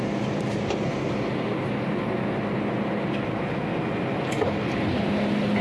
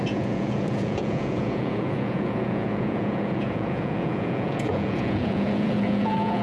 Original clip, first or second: first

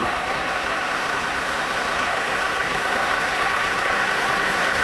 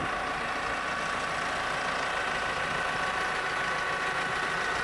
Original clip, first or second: second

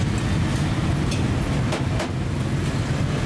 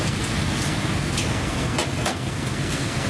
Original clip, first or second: first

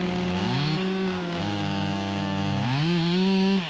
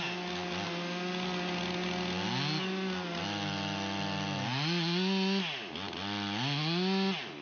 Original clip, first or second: second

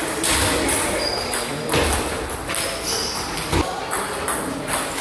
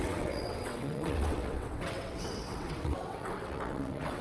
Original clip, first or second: first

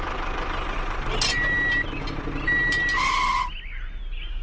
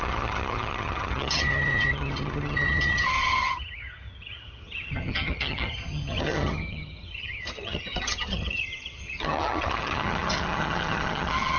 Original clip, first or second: first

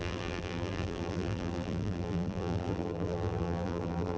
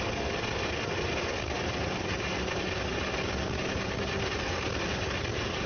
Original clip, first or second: second